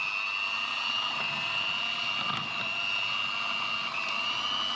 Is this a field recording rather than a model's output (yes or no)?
yes